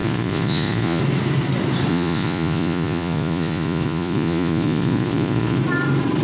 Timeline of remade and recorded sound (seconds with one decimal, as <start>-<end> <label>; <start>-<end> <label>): 0.0-1.0 remade; 1.0-1.9 recorded; 1.9-5.6 remade; 5.6-6.2 recorded